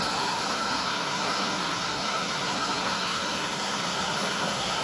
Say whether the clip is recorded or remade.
remade